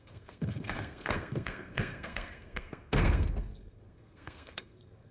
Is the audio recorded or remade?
remade